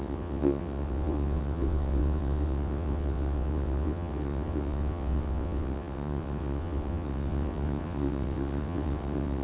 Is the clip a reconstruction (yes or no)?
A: yes